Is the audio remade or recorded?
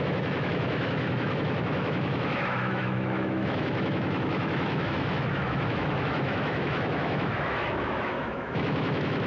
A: remade